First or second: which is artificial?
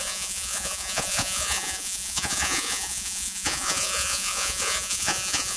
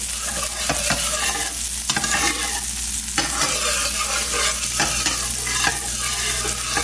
first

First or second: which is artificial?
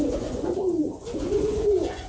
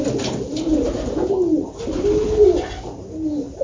first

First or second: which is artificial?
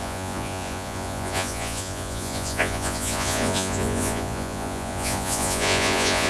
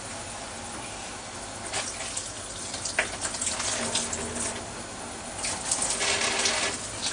first